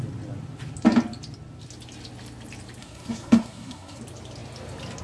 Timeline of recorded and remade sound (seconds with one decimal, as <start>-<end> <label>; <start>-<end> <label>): 0.0-2.8 recorded; 2.8-4.0 remade; 4.0-5.0 recorded

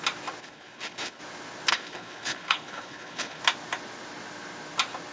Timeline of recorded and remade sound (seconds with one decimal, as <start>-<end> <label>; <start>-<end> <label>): 0.0-0.4 recorded; 0.4-1.2 remade; 1.2-1.7 recorded; 1.7-3.4 remade; 3.4-5.1 recorded